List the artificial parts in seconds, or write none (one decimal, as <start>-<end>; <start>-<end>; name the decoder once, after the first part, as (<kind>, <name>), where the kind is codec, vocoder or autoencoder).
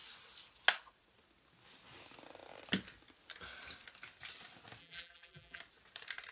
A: 4.8-5.6 (vocoder, BigVGAN v2)